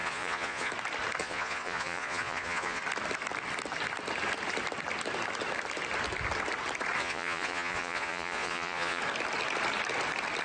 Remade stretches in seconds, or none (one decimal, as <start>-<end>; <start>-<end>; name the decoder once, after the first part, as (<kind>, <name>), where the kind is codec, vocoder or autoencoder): 0.0-0.7 (vocoder, Vocos); 1.2-2.8; 7.0-9.0